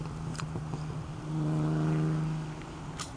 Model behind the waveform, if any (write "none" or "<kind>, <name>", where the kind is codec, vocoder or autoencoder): none